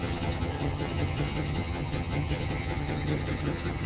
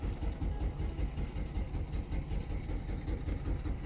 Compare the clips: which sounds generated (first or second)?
first